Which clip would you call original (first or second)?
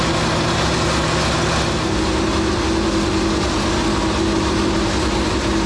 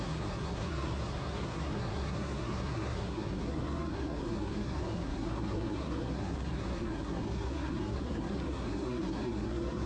first